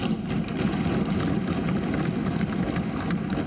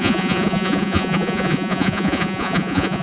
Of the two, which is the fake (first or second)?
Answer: second